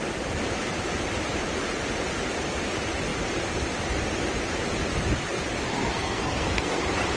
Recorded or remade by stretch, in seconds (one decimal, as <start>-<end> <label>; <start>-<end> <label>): 0.0-5.7 recorded; 5.7-6.8 remade; 6.8-7.2 recorded